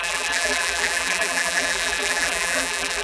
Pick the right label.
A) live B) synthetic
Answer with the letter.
B